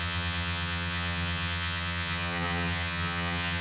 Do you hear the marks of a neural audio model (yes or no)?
yes